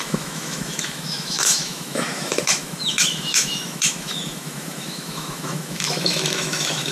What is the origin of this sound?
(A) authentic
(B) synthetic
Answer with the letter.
B